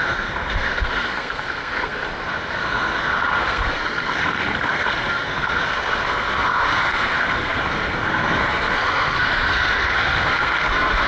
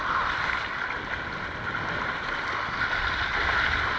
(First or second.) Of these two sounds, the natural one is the second